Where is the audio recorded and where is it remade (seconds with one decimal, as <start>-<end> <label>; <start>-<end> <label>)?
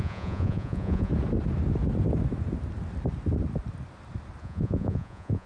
0.0-1.1 remade; 1.1-4.4 recorded; 4.4-5.5 remade